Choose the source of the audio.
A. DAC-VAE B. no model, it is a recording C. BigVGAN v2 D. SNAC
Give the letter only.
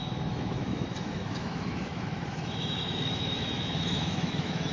A